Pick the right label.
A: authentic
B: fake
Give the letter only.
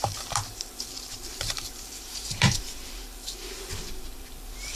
B